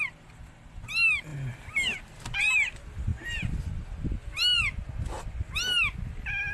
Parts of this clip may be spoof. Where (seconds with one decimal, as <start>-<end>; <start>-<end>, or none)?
none